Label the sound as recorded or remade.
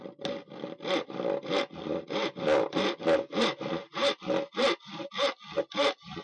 recorded